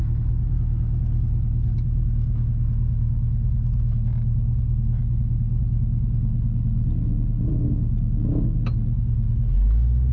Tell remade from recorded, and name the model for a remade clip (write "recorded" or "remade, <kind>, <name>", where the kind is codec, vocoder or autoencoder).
recorded